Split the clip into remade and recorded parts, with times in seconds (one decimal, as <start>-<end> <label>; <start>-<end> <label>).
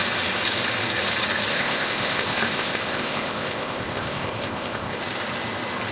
0.0-1.5 recorded; 1.5-5.0 remade; 5.0-5.9 recorded